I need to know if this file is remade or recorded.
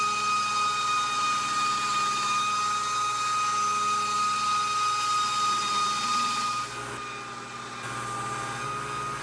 recorded